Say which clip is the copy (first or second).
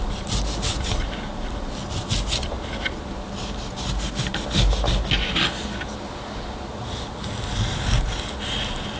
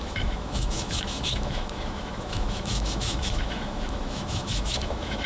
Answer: second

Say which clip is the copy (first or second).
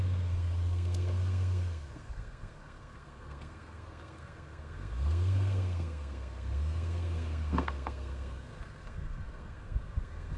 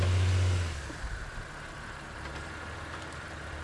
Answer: first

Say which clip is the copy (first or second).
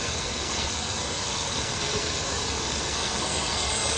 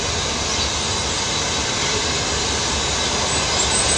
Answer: first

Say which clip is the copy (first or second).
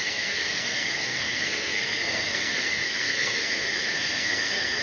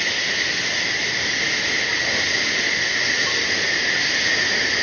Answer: first